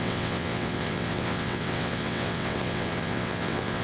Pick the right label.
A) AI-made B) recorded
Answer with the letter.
A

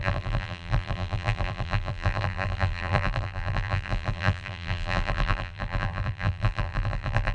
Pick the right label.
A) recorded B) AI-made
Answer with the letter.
B